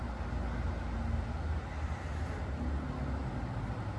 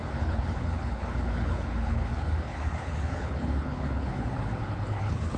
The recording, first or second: first